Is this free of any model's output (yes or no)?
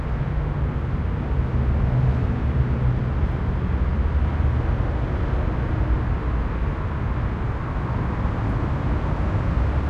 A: yes